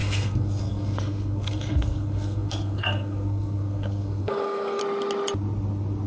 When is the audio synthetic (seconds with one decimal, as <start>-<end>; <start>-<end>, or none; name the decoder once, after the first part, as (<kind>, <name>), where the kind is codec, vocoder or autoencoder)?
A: 0.0-4.8 (codec, SNAC)